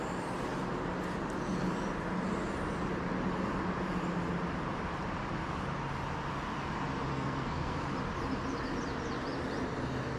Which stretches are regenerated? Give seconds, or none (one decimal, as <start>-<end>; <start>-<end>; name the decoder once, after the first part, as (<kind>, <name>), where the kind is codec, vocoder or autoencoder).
7.1-7.8 (codec, SNAC)